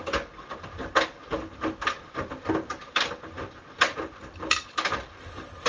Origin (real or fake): real